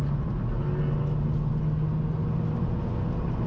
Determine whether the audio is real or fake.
real